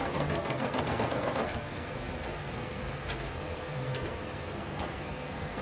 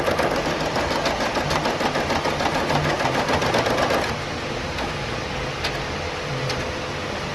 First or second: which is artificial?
first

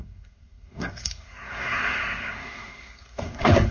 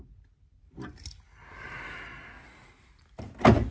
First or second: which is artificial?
first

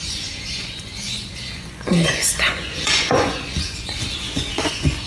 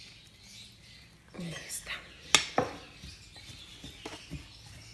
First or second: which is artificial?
first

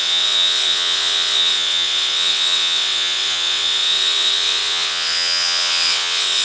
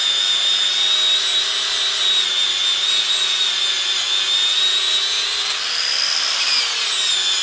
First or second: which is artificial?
first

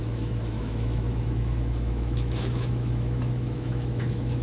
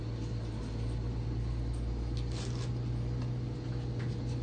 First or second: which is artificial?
first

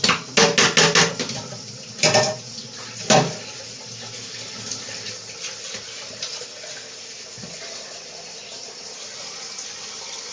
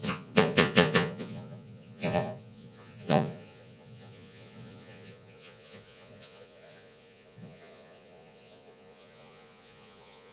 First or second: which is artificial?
second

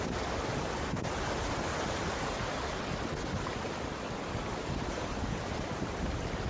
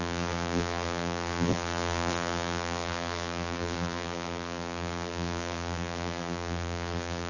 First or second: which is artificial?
second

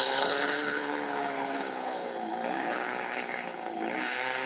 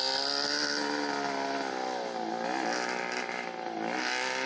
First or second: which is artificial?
first